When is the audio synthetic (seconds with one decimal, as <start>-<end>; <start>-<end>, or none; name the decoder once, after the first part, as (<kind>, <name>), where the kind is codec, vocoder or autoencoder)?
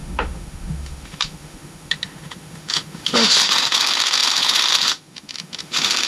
0.0-6.1 (autoencoder, DAC-VAE)